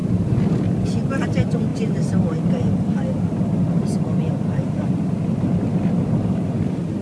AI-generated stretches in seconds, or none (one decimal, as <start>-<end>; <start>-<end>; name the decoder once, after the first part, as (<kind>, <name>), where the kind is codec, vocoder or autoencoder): none